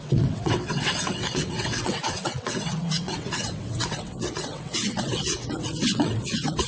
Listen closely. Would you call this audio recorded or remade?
remade